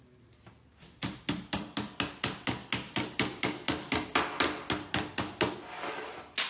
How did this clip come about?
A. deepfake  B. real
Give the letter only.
B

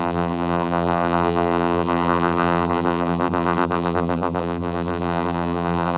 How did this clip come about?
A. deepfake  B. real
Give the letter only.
A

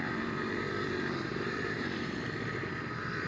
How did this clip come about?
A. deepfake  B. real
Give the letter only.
A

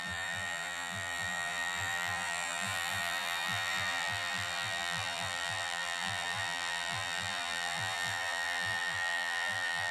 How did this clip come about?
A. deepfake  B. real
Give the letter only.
A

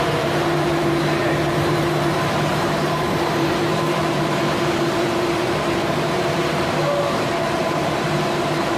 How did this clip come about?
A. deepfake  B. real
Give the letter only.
A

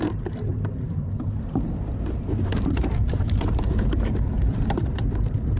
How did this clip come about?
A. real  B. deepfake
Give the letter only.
B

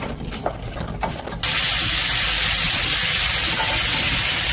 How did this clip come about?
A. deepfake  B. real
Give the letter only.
B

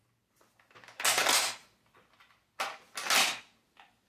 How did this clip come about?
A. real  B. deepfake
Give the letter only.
A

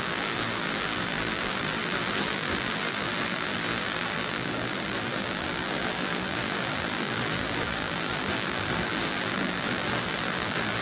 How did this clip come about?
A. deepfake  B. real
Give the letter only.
A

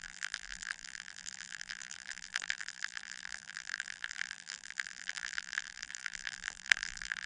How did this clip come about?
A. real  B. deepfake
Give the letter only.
B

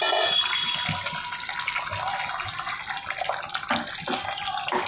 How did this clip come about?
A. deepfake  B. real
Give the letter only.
B